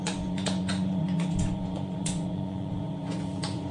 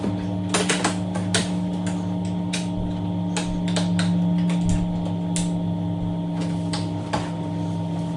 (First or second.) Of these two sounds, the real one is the second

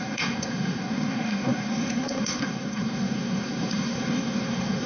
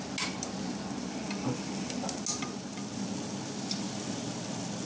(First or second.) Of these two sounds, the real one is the second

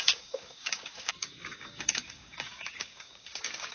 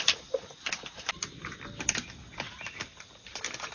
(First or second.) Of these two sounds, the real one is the second